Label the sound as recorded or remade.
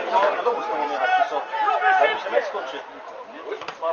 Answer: recorded